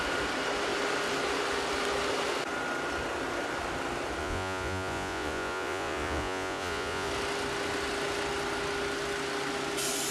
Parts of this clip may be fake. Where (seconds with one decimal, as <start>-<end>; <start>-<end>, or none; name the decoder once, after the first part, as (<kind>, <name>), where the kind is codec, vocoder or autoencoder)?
4.2-7.1 (vocoder, Vocos)